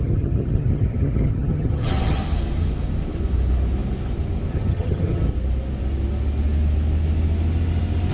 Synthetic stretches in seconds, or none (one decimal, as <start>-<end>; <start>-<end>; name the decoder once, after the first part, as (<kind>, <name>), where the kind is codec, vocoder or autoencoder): 0.0-2.2 (vocoder, HiFi-GAN); 4.5-5.3